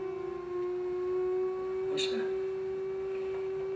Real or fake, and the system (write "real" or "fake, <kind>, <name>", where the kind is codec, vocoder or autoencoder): real